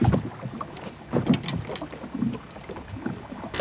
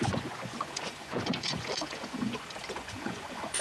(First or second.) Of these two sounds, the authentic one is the first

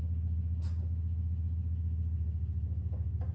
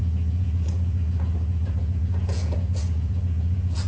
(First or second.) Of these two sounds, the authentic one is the first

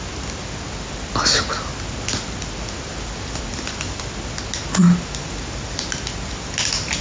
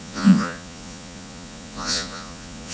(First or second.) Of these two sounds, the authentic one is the first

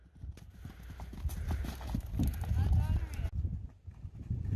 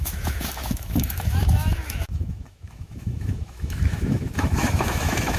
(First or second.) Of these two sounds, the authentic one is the first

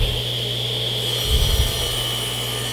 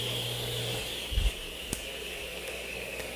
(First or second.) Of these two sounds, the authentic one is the first